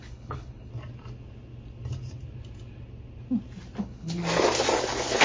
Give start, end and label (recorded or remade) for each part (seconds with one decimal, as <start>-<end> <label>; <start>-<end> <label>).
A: 0.0-0.7 remade; 0.7-3.8 recorded; 3.8-4.2 remade; 4.2-5.2 recorded